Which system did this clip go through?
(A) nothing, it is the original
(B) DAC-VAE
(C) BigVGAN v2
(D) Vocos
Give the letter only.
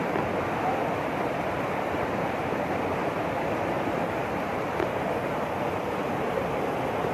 A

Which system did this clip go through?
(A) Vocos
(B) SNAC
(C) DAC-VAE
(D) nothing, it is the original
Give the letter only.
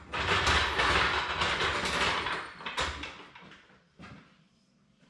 D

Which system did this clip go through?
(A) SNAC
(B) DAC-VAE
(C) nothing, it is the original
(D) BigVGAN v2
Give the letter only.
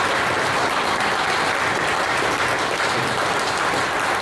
C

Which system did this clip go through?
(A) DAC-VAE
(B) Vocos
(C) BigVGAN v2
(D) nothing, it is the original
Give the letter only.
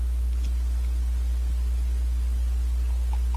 D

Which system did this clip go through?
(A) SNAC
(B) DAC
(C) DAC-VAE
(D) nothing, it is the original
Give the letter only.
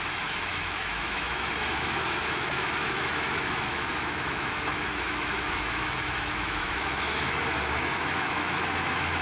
C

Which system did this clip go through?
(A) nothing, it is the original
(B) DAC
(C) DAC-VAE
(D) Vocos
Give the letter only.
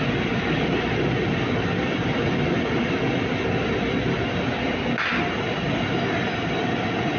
A